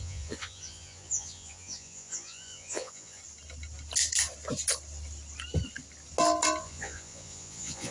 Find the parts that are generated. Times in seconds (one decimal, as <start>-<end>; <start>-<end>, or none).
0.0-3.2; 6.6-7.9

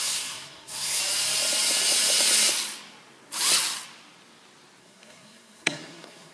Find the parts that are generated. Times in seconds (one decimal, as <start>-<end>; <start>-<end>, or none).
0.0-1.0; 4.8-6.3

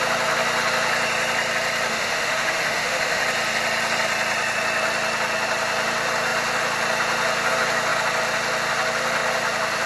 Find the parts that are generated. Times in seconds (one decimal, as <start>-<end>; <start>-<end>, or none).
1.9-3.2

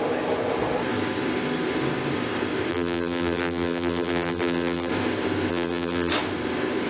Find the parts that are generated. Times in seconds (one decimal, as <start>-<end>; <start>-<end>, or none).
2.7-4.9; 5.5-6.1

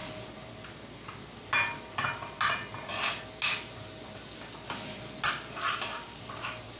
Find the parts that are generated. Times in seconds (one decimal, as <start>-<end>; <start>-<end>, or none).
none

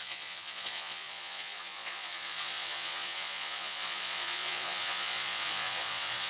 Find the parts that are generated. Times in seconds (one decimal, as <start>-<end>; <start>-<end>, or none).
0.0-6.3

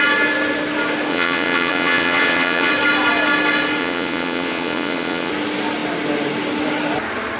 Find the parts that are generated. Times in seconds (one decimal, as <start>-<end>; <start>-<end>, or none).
1.1-2.7; 3.8-5.3